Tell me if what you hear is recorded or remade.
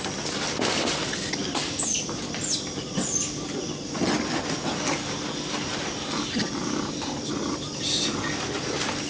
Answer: recorded